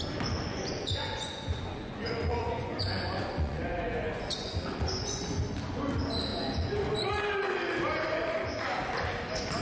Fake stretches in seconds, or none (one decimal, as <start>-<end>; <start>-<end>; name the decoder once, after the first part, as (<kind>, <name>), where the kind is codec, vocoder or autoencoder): 0.5-5.4 (vocoder, Vocos); 6.3-7.1